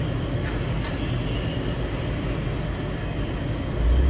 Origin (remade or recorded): recorded